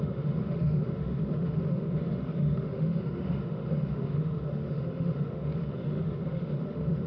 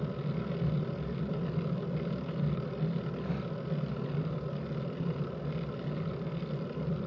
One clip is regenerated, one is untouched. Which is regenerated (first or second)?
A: first